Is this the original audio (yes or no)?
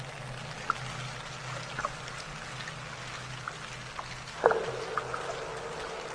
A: yes